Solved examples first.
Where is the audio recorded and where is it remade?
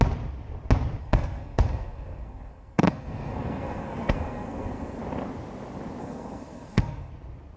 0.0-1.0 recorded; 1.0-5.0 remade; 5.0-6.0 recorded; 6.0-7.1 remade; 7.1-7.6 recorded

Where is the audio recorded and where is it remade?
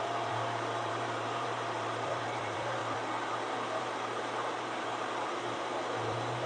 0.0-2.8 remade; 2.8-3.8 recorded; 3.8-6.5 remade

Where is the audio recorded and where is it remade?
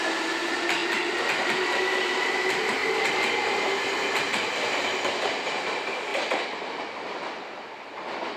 0.0-8.4 recorded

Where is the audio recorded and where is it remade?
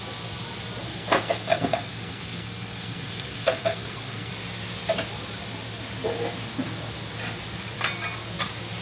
0.0-0.9 recorded; 0.9-4.3 remade; 4.3-8.8 recorded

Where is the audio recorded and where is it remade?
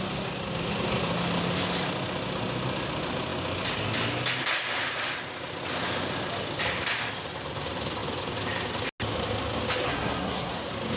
0.0-9.8 recorded; 9.8-10.5 remade; 10.5-11.0 recorded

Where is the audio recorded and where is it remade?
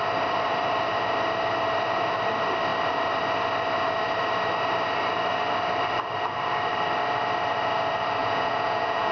0.0-8.2 recorded; 8.2-9.1 remade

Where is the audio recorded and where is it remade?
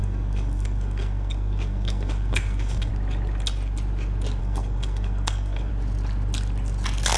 0.0-2.9 remade; 2.9-4.4 recorded; 4.4-5.7 remade; 5.7-7.2 recorded